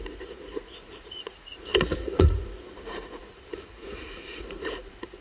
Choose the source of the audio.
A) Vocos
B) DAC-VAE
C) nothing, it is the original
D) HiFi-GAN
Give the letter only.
A